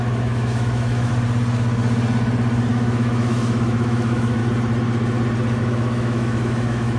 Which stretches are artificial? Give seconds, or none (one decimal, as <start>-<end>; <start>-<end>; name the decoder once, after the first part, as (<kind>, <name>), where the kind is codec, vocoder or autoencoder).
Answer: 0.0-1.1 (autoencoder, DAC-VAE); 2.7-4.4; 5.6-7.0